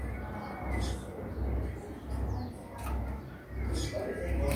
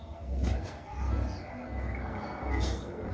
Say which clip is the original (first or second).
first